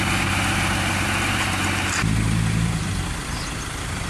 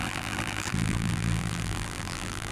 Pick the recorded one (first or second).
first